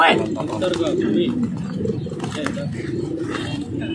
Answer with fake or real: real